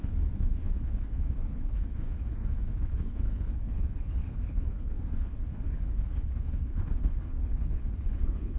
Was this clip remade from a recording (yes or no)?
yes